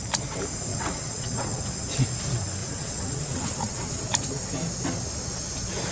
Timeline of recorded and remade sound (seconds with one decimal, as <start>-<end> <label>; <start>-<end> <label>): 0.0-0.7 recorded; 0.7-1.6 remade; 1.6-2.6 recorded; 2.6-4.0 remade; 4.0-5.9 recorded